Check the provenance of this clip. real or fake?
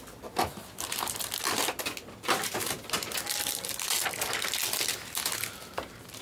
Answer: real